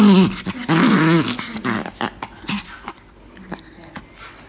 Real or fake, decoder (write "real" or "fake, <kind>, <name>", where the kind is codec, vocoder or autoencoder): real